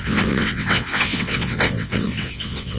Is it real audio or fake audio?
fake